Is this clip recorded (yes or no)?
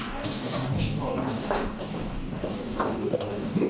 no